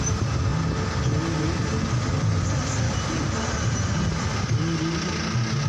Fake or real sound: real